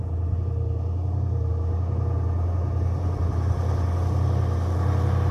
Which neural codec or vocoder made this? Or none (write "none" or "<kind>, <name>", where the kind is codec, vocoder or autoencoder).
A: none